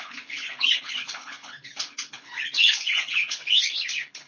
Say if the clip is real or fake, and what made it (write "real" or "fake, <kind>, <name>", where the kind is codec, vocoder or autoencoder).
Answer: fake, codec, HILCodec